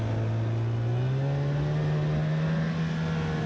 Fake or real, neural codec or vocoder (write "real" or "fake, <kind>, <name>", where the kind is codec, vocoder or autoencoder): real